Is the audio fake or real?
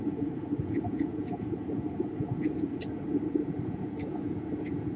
fake